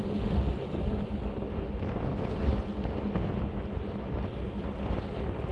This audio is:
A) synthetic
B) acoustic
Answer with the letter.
B